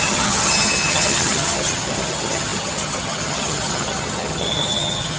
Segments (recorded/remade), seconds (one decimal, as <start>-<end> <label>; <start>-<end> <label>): 0.0-5.2 remade